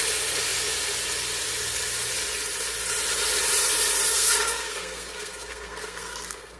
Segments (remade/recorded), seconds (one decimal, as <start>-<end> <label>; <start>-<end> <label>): 0.0-4.1 recorded; 4.1-6.6 remade